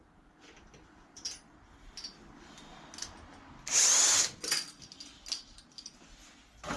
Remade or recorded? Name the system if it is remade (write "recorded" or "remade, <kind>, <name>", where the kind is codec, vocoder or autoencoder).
recorded